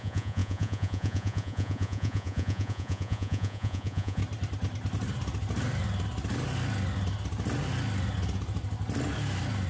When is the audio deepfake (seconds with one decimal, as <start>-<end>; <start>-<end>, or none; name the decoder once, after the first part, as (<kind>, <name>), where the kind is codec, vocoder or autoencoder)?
0.0-4.2 (vocoder, Vocos)

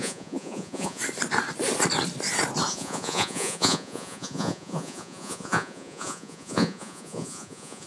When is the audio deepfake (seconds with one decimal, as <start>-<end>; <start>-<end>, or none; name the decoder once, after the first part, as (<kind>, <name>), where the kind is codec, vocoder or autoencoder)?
0.0-1.0 (vocoder, Vocos); 2.7-7.9

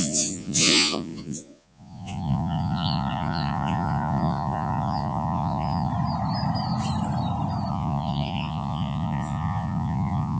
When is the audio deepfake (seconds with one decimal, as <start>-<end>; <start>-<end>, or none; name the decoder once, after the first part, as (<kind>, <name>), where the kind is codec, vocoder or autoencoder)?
0.0-5.9 (vocoder, Vocos); 7.7-10.4

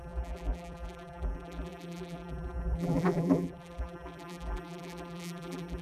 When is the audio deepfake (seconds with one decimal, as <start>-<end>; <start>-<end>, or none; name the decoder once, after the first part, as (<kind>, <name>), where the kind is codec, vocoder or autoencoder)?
0.0-5.8 (vocoder, BigVGAN v2)

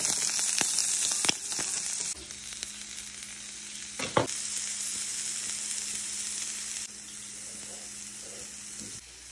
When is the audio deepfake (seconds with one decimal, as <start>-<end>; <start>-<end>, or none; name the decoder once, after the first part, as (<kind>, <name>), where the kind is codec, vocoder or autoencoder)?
none

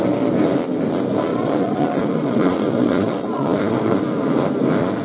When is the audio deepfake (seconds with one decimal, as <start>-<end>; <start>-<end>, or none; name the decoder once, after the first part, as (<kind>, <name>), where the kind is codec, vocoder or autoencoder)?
1.3-3.9 (vocoder, Vocos)

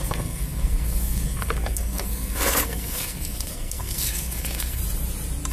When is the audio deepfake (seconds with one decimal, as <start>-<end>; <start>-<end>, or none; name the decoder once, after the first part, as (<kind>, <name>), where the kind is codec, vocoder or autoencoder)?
0.0-4.8 (codec, SNAC)

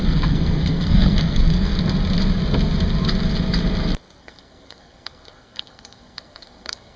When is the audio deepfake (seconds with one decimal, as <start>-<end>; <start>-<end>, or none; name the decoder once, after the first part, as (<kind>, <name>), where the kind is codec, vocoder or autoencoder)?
0.0-1.7 (codec, SNAC); 4.2-7.0